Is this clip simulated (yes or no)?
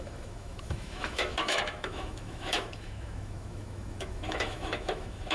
yes